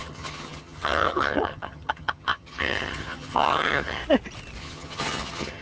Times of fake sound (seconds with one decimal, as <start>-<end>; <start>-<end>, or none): 0.0-4.0; 4.6-5.6